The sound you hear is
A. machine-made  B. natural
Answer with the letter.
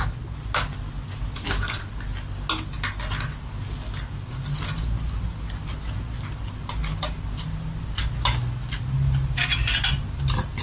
B